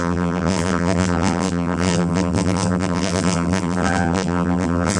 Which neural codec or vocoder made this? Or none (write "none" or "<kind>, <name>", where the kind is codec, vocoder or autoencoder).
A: vocoder, BigVGAN v2